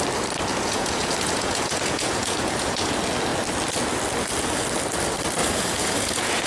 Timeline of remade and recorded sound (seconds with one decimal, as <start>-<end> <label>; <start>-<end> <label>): 0.0-0.5 recorded; 0.5-2.9 remade; 2.9-5.4 recorded; 5.4-6.5 remade